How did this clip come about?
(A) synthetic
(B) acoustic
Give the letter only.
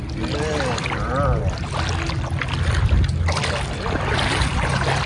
B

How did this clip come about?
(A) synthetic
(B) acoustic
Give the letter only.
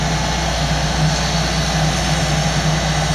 B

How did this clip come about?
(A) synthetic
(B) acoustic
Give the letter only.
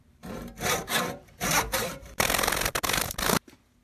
A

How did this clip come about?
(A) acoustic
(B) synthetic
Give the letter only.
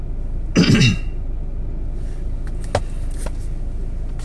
A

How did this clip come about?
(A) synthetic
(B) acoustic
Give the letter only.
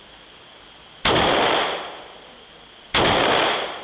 B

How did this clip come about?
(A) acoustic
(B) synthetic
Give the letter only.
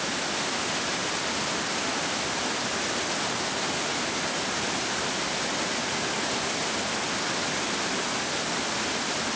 A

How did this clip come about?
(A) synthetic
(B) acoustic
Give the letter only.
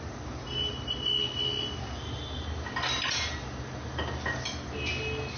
B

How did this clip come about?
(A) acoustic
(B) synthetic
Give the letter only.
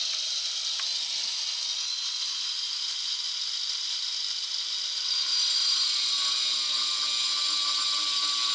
A